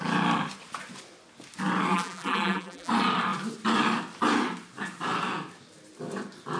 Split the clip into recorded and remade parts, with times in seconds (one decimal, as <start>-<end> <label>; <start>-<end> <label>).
0.0-1.9 recorded; 1.9-2.9 remade; 2.9-6.6 recorded